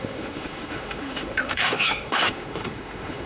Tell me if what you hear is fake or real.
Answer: fake